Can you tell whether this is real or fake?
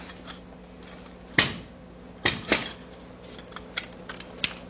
real